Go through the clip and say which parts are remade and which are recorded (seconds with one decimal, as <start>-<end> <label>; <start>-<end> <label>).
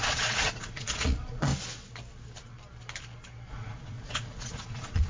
0.0-1.5 remade; 1.5-3.5 recorded; 3.5-5.1 remade